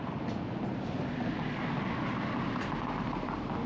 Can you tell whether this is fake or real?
real